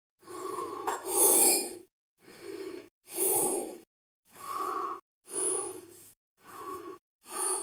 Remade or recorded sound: remade